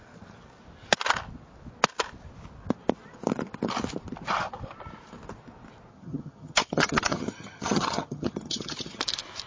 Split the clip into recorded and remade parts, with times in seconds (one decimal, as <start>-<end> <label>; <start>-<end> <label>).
0.0-5.9 recorded; 5.9-9.0 remade; 9.0-9.5 recorded